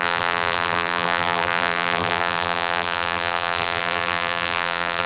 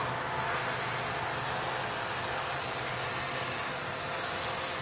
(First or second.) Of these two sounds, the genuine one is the second